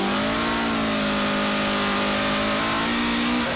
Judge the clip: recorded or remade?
recorded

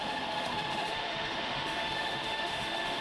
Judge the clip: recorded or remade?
remade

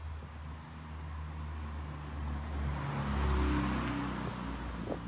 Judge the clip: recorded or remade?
recorded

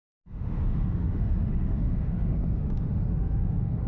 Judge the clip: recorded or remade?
remade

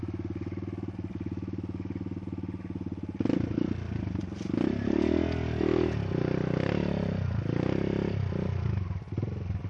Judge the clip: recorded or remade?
recorded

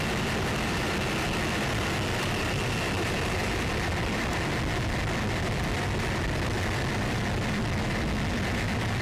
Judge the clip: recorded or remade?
recorded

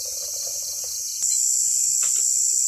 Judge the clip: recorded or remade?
recorded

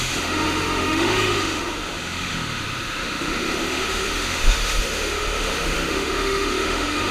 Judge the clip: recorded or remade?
remade